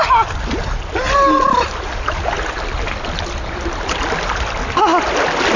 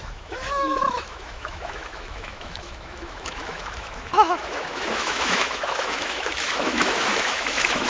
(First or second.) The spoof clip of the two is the second